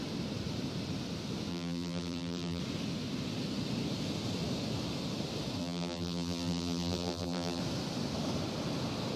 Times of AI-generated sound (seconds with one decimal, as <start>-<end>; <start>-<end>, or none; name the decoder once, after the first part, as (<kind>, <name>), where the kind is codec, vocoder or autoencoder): 1.5-2.6 (vocoder, BigVGAN v2); 5.6-7.6